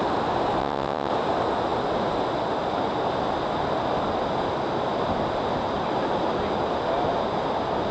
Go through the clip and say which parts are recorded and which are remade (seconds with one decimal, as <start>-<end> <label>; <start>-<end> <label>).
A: 0.0-0.6 recorded; 0.6-1.1 remade; 1.1-7.9 recorded